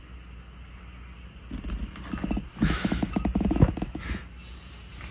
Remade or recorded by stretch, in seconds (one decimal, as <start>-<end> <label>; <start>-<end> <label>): 0.0-2.5 recorded; 2.5-4.2 remade; 4.2-5.1 recorded